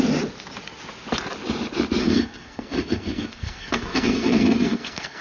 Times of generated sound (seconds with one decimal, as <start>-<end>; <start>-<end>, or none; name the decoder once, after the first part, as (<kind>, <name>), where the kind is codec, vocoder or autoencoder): 2.0-5.2 (codec, SNAC)